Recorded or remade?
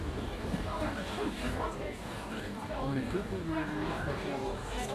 remade